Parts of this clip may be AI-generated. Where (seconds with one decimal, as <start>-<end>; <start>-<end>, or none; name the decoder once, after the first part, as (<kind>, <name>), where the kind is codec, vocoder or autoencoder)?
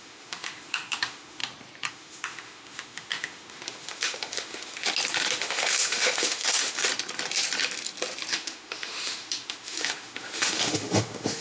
0.0-1.4 (autoencoder, DAC-VAE); 1.9-4.9; 5.4-6.9; 8.3-11.4